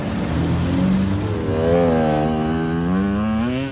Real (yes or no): yes